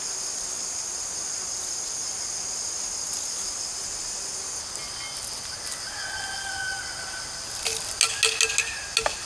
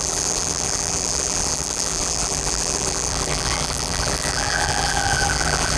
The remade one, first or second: second